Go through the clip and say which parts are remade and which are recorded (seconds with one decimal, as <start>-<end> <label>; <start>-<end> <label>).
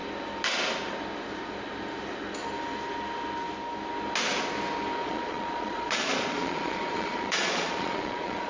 0.0-5.0 recorded; 5.0-8.5 remade